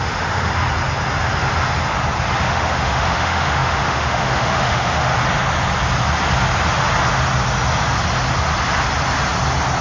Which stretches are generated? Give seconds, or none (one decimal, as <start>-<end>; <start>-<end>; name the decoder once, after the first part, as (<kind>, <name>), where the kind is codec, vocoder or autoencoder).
0.0-0.5 (autoencoder, DAC-VAE); 2.4-5.1